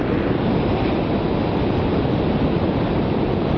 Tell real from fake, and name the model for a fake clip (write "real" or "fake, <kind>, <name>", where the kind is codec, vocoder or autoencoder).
real